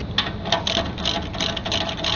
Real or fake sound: real